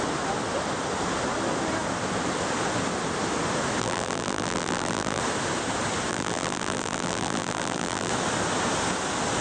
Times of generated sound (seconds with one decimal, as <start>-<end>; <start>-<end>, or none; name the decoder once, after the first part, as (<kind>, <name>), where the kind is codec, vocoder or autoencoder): 3.8-5.2 (vocoder, BigVGAN v2); 6.1-8.1